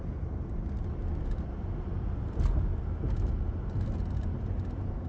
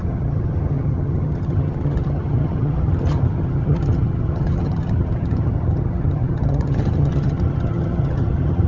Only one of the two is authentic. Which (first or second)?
first